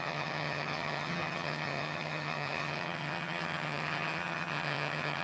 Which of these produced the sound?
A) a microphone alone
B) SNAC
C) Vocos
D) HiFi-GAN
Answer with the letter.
D